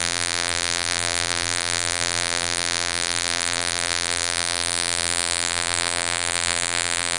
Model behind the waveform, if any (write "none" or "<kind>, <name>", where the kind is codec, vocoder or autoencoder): vocoder, BigVGAN v2